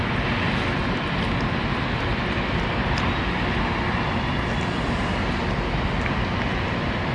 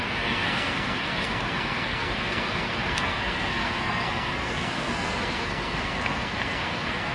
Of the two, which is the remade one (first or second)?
second